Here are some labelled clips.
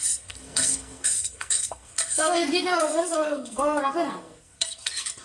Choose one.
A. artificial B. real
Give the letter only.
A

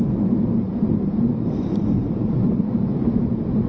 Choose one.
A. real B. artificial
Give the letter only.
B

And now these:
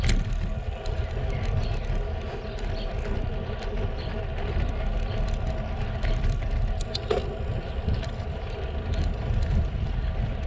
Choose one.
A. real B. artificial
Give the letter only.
A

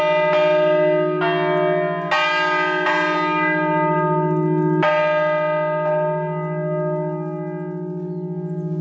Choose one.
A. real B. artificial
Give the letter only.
A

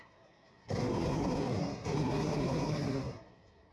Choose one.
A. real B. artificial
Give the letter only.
B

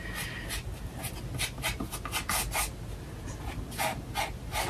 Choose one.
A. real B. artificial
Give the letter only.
A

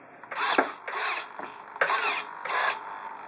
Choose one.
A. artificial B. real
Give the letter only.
B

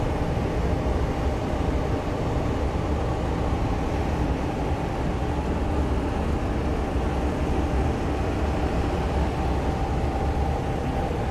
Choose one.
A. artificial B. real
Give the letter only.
B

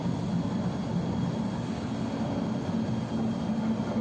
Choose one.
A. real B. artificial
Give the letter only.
A